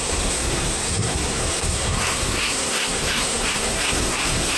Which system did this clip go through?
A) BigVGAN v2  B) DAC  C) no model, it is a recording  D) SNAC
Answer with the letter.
D